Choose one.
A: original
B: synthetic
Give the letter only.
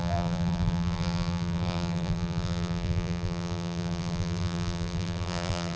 B